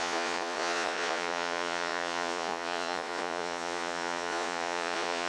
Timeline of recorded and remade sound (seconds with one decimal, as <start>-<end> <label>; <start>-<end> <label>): 0.0-5.3 remade